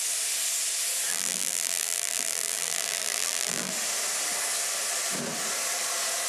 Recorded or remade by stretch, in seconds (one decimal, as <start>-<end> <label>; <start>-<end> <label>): 0.0-1.1 recorded; 1.1-3.7 remade; 3.7-6.3 recorded

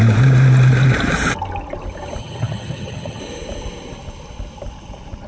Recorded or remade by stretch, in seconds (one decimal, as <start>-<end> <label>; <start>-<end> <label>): 0.0-2.2 recorded; 2.2-3.2 remade; 3.2-5.3 recorded

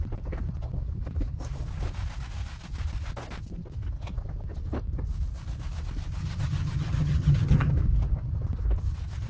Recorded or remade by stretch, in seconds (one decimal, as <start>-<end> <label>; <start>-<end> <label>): 0.0-6.2 recorded; 6.2-7.7 remade; 7.7-9.3 recorded

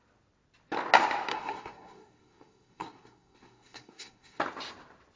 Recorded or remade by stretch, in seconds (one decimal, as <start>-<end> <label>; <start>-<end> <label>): 0.0-1.3 recorded; 1.3-4.4 remade; 4.4-5.2 recorded